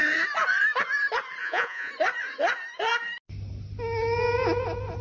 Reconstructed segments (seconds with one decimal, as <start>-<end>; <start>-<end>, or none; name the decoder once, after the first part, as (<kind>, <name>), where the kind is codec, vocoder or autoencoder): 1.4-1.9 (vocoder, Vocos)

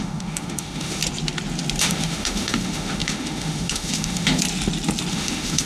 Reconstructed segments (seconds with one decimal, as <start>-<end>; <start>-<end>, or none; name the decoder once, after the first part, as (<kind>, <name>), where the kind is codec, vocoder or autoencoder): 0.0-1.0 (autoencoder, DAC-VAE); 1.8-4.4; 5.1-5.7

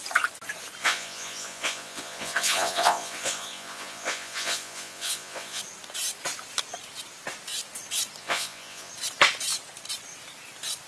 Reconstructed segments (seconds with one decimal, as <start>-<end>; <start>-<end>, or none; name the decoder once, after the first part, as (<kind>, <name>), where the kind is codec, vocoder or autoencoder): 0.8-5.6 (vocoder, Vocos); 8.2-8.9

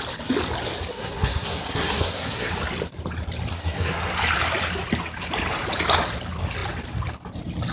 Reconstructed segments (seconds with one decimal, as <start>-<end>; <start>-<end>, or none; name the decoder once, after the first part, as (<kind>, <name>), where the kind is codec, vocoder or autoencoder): 0.9-2.5 (codec, SNAC); 3.5-4.1

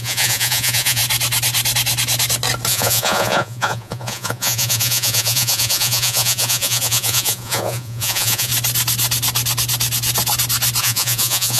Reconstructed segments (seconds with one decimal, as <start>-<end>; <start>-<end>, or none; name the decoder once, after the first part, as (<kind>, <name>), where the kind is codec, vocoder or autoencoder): 0.0-1.0 (vocoder, Vocos); 2.7-8.5; 10.8-11.6

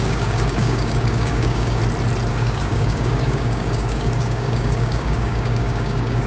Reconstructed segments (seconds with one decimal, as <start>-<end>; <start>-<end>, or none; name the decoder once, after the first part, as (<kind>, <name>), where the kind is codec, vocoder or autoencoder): 0.0-1.8 (codec, DAC); 2.3-6.3